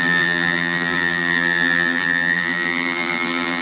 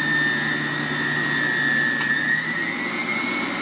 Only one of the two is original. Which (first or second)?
second